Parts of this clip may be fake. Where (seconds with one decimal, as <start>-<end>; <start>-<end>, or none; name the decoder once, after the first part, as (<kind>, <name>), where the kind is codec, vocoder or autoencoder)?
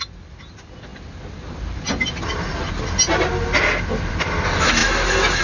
none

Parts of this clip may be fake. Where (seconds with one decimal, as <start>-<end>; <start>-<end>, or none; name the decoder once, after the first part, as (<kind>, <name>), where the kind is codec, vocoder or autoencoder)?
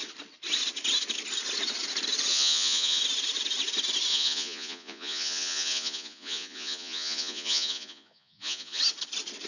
2.3-3.0 (vocoder, Vocos); 4.1-8.8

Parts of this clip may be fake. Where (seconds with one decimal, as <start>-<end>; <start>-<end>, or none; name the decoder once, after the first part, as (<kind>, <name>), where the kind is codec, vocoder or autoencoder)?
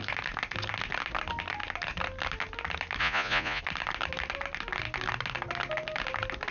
3.0-3.6 (vocoder, Vocos)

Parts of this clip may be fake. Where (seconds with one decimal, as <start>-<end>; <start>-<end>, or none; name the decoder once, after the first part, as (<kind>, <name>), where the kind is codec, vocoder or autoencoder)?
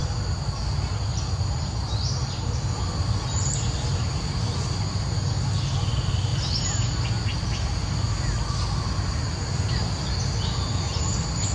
none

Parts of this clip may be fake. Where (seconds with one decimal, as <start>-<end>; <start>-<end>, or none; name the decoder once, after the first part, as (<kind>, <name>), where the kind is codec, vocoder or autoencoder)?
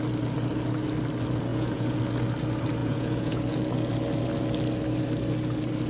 1.5-2.0 (vocoder, Vocos); 2.8-3.7